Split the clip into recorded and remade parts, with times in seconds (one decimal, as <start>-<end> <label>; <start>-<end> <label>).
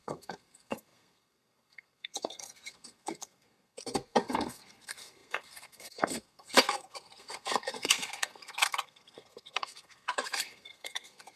0.0-11.4 remade